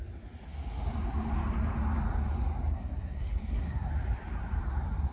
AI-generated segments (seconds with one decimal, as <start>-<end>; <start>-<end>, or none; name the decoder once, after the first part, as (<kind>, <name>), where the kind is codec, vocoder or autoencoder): 2.7-3.9 (codec, SNAC)